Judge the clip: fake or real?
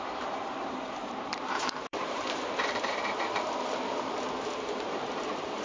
fake